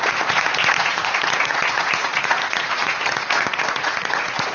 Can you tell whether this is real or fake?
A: fake